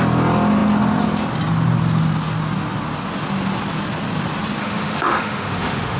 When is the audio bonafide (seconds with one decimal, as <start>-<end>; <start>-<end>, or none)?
0.0-4.6